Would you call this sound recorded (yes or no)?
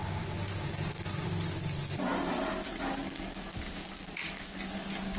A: yes